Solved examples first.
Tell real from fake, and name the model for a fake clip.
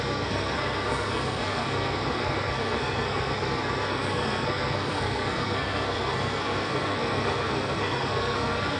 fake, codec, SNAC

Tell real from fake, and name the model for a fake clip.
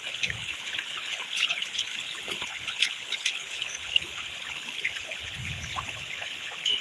fake, codec, HILCodec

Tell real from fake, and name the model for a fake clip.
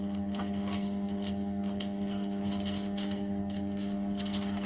fake, codec, SNAC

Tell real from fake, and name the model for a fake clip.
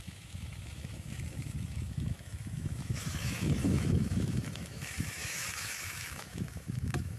fake, autoencoder, DAC-VAE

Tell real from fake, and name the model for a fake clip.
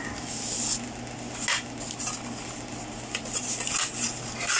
real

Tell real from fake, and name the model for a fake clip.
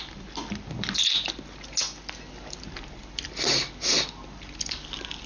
real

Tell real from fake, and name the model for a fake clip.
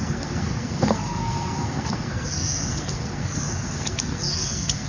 fake, codec, SNAC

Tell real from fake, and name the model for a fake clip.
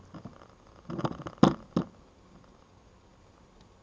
real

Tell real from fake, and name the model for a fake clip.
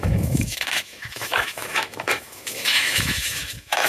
fake, autoencoder, DAC-VAE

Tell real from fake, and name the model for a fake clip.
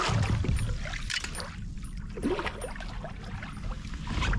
real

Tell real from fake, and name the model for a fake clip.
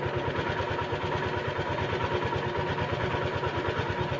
real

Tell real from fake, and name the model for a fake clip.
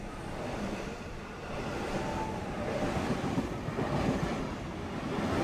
real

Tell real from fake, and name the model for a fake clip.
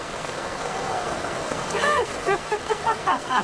fake, codec, SNAC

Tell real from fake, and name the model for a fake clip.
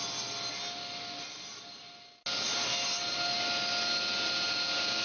real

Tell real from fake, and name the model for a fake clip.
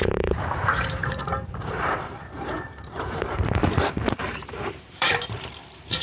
fake, vocoder, BigVGAN v2